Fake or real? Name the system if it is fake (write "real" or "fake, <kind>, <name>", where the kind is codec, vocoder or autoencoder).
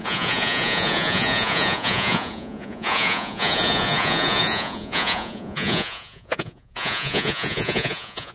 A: fake, vocoder, Vocos